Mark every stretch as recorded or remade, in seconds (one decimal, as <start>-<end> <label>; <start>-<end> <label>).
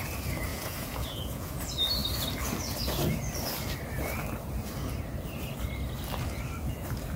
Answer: 0.0-0.5 recorded; 0.5-1.6 remade; 1.6-7.2 recorded